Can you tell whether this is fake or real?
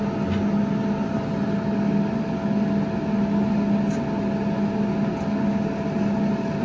real